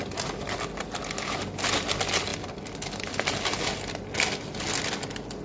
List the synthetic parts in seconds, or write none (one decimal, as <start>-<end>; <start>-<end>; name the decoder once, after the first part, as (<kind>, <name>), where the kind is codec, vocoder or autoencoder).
none